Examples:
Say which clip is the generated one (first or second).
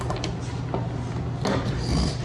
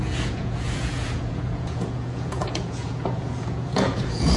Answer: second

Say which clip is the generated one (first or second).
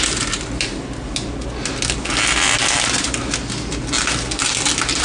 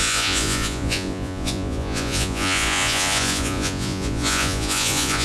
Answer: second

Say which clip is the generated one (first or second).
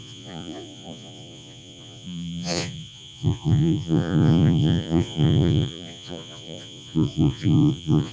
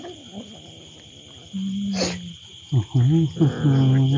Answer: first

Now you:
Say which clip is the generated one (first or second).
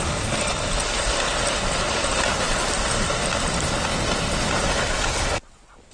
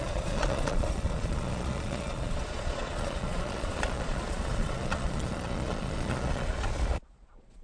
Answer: second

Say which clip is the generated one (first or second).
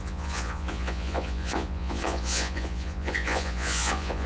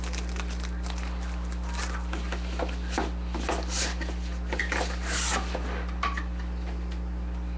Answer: first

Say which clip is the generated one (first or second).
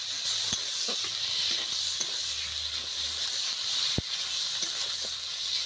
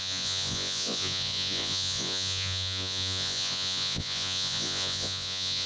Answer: second